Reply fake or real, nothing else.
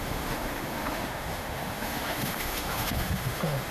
fake